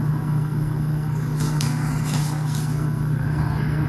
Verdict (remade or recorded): remade